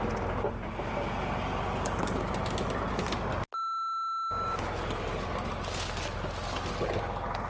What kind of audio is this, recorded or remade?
recorded